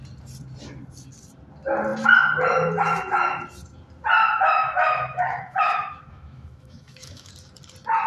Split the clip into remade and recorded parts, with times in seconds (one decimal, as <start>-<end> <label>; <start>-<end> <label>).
0.0-4.2 recorded; 4.2-7.3 remade; 7.3-8.1 recorded